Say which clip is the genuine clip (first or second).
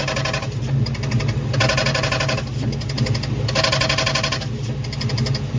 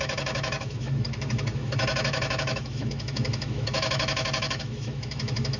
first